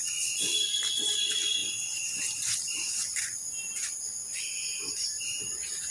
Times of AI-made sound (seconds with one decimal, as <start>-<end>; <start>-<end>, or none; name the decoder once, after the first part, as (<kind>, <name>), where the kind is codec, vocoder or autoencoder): none